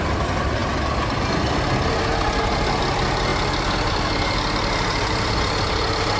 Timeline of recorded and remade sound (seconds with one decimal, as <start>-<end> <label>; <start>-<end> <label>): 0.0-6.2 recorded